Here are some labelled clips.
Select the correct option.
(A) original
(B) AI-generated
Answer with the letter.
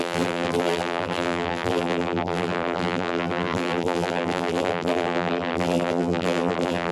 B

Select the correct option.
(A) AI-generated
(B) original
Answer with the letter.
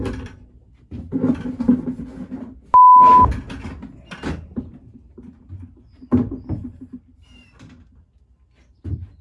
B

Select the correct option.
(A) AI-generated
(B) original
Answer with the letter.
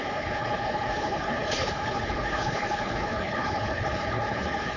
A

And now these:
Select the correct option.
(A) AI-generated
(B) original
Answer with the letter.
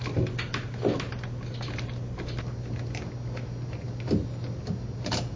B